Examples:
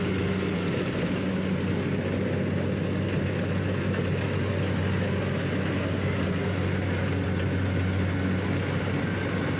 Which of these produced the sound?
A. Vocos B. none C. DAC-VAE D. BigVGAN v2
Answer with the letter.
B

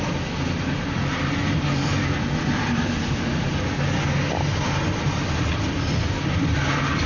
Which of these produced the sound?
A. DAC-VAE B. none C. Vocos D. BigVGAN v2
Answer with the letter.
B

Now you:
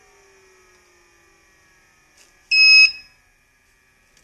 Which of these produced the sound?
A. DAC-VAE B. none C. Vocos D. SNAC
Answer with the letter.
B